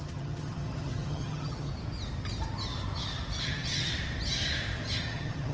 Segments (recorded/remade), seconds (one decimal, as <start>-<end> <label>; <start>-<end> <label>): 0.0-1.7 remade; 1.7-3.4 recorded; 3.4-3.9 remade; 3.9-5.0 recorded; 5.0-5.5 remade